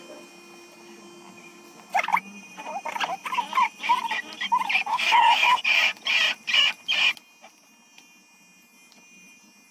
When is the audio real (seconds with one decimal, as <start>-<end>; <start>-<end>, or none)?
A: 0.0-4.9; 5.6-9.7